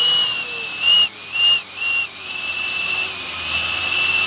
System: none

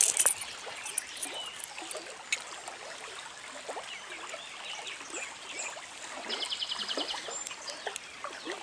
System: none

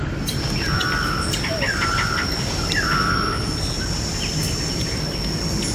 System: none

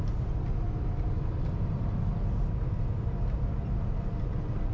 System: none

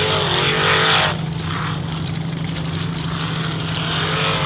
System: none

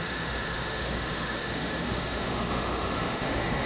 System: autoencoder, DAC-VAE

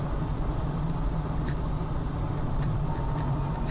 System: none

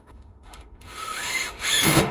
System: autoencoder, DAC-VAE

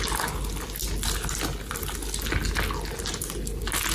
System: none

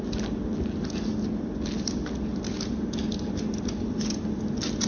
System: none